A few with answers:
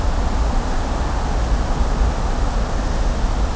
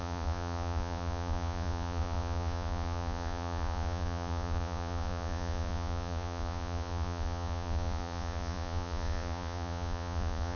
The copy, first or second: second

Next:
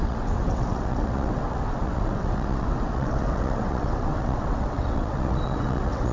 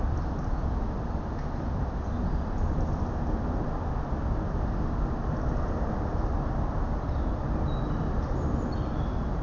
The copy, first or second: first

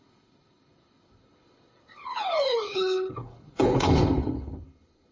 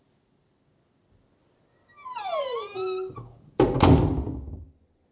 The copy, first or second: first